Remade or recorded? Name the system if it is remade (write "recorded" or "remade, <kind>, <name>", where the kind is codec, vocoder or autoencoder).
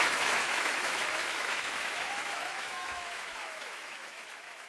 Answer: remade, autoencoder, DAC-VAE